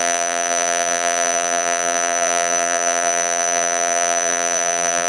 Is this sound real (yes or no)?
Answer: no